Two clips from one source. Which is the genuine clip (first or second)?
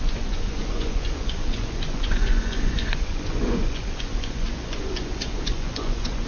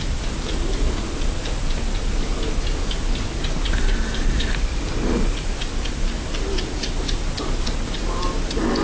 second